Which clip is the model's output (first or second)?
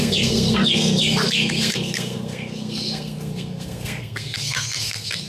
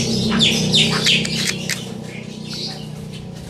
first